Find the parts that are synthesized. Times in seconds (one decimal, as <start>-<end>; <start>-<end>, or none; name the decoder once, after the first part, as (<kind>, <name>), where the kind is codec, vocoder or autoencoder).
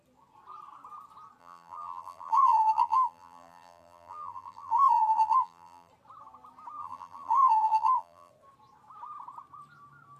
1.4-5.9 (vocoder, BigVGAN v2); 6.8-8.3